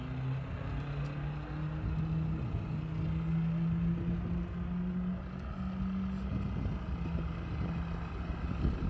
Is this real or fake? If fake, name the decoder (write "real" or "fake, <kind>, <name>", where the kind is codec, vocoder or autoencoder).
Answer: real